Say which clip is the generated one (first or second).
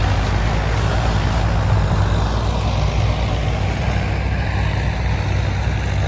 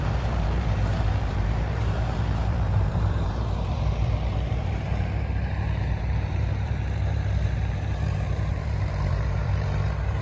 second